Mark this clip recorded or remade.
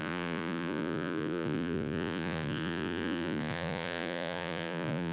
remade